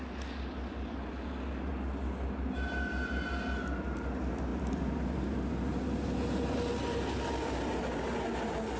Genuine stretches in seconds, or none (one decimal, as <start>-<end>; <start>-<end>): 0.0-8.8

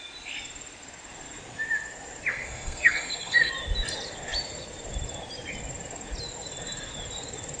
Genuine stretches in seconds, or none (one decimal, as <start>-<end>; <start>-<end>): 0.0-2.3; 3.5-7.6

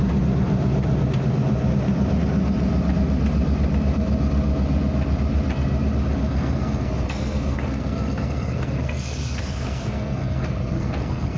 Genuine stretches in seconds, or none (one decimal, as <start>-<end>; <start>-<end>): 0.0-6.2

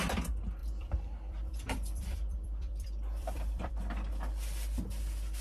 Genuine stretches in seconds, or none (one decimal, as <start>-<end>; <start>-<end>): 0.0-0.6; 3.7-5.4

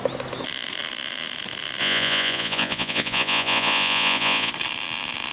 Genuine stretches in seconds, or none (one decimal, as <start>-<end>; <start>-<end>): 0.0-1.8; 4.5-5.3

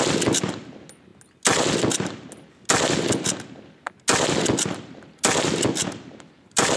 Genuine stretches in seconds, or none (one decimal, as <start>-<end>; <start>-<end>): 0.0-5.8

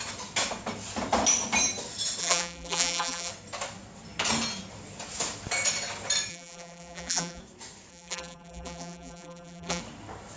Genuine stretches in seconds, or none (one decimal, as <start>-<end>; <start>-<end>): 0.0-2.2; 3.3-6.3; 7.4-7.9; 9.8-10.4